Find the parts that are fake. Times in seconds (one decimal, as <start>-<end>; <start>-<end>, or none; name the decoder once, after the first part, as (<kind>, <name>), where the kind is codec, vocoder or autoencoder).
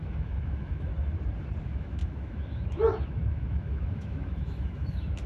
0.0-0.9 (autoencoder, DAC-VAE); 1.6-5.3